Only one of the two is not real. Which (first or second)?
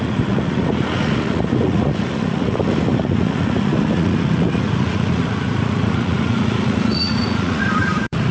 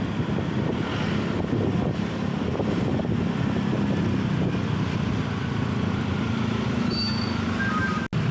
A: first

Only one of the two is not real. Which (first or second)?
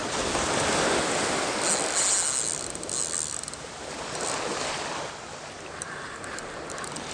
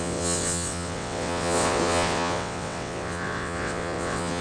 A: second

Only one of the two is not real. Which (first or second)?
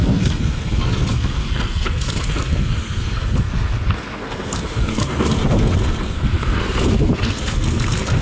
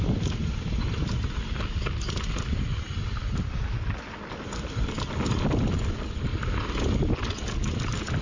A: first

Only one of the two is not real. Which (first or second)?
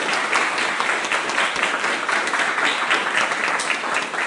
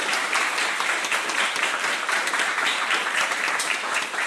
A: second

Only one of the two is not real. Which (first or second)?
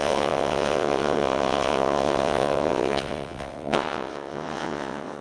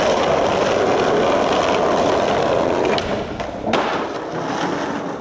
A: first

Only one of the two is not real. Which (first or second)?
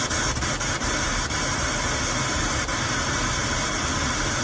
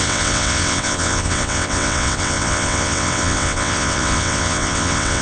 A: second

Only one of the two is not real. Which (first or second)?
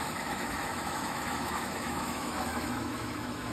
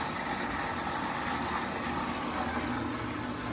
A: first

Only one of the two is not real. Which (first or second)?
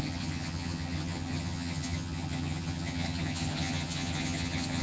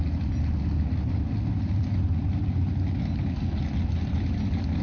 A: first